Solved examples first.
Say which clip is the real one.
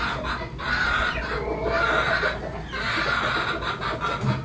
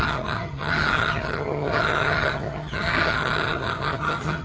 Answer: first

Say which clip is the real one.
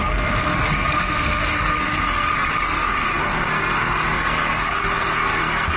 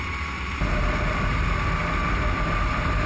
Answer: second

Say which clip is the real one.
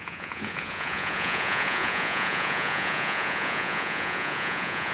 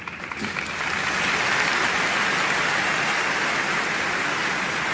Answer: second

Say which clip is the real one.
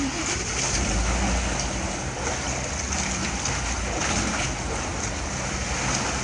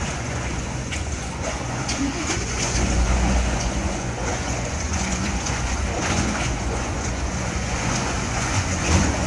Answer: first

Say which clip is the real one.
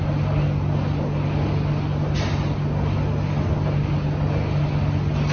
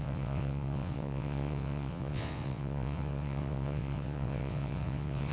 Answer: first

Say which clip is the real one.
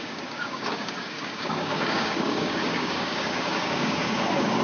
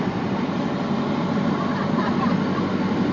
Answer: second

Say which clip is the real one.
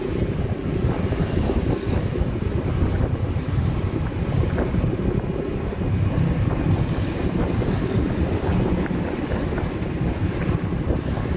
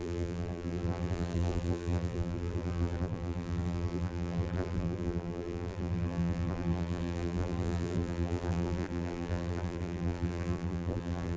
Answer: first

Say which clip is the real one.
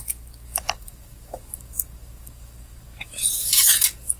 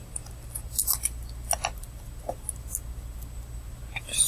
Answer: second